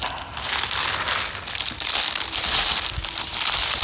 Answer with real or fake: real